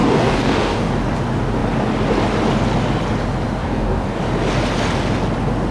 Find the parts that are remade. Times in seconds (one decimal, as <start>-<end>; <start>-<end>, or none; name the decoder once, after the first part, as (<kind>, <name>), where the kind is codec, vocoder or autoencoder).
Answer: 0.0-0.9 (codec, DAC); 3.6-4.2